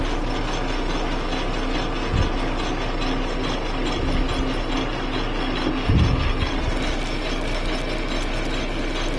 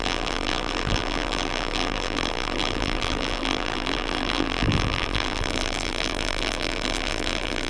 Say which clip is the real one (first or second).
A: first